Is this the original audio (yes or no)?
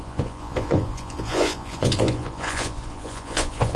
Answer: no